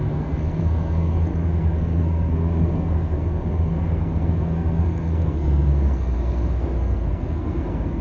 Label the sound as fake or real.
fake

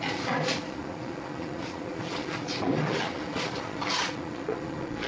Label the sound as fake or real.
fake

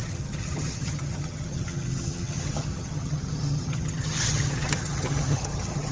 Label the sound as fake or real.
fake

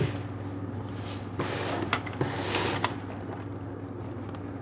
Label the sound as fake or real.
real